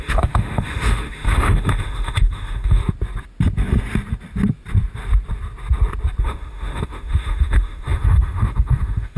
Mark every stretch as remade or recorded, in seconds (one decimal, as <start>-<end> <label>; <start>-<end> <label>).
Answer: 0.0-2.8 remade; 2.8-6.2 recorded; 6.2-9.2 remade